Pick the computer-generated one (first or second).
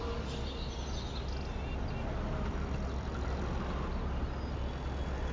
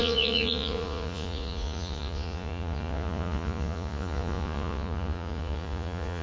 second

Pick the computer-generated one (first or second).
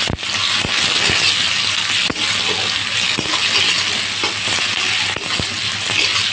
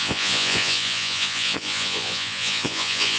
second